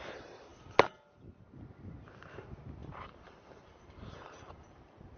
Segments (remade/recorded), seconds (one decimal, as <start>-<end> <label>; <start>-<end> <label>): 0.0-2.8 recorded; 2.8-5.2 remade

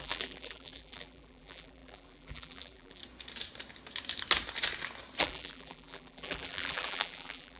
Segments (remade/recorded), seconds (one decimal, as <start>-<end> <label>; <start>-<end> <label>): 0.0-3.0 remade; 3.0-5.2 recorded; 5.2-7.6 remade

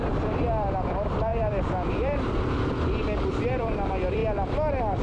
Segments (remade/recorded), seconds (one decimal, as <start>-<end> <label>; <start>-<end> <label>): 0.0-4.2 remade; 4.2-5.0 recorded

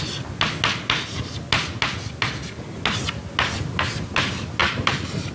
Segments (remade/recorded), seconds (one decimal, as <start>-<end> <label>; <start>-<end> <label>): 0.0-4.6 recorded; 4.6-5.3 remade